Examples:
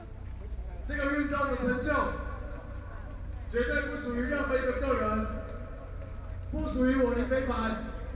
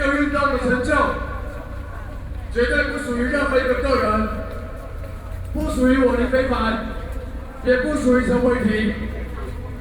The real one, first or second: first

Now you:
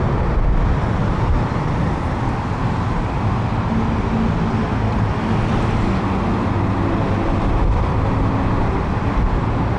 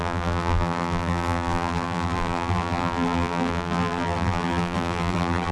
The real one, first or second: first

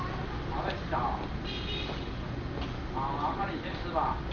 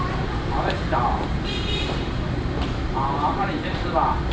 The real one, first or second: first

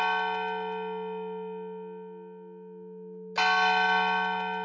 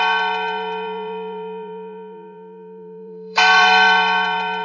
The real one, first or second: first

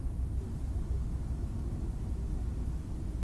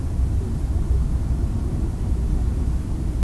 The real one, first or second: first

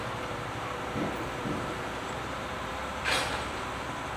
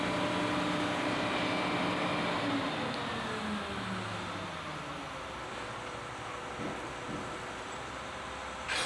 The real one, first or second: second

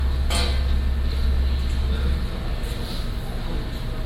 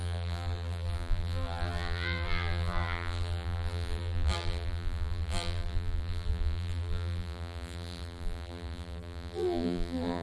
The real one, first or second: first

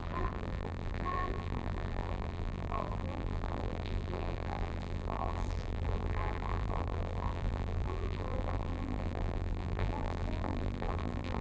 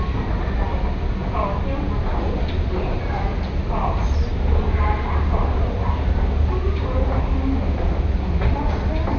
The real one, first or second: second